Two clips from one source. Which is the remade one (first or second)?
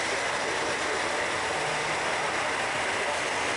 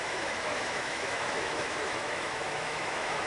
second